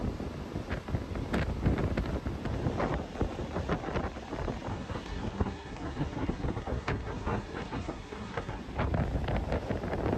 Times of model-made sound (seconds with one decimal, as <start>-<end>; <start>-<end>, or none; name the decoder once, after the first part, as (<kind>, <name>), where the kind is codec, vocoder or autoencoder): 4.7-8.6 (codec, SNAC)